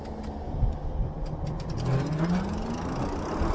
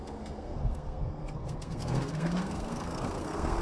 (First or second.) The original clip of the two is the first